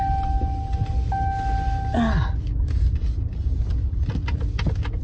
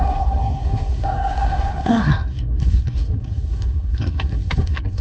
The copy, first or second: second